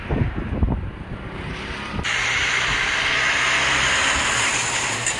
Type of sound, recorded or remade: recorded